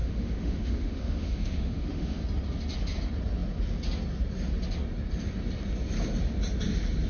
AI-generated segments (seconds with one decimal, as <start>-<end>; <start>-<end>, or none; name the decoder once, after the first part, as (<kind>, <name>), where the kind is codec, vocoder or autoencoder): 0.0-2.2 (autoencoder, DAC-VAE)